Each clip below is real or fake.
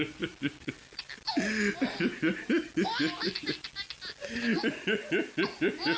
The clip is real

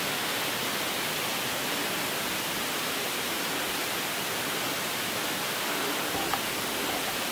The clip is real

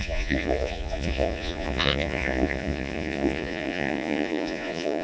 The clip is fake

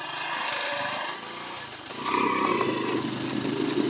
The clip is real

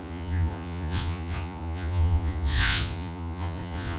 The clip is fake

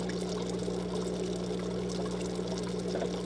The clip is real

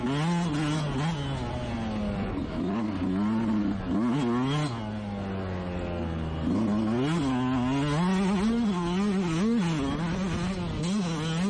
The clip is real